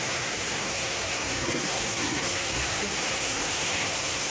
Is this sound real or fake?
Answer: fake